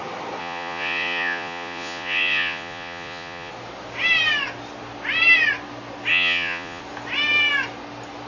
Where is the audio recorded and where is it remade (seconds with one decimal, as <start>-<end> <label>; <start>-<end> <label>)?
0.0-0.4 recorded; 0.4-3.5 remade; 3.5-6.1 recorded; 6.1-6.8 remade; 6.8-8.3 recorded